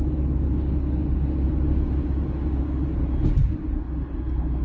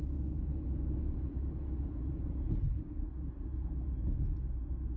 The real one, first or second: first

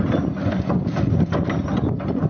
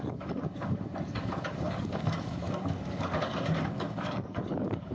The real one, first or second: first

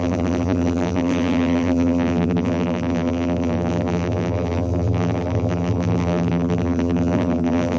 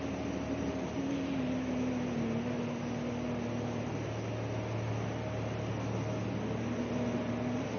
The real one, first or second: second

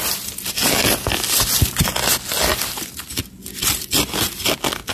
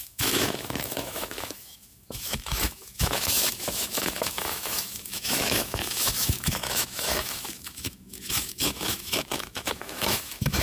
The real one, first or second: first